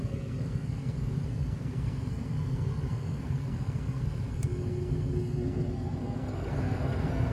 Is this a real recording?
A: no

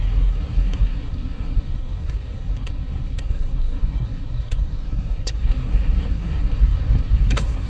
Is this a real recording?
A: no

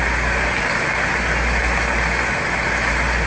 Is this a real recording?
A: yes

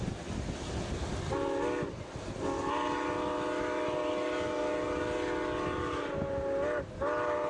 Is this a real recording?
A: yes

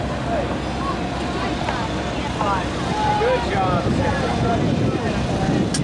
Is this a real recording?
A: yes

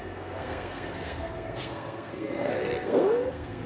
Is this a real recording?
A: no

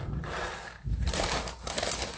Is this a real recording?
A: yes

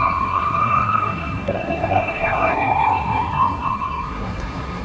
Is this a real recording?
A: no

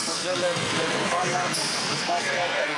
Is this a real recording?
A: no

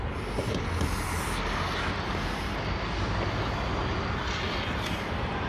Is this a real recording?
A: yes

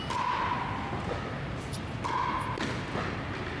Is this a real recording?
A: yes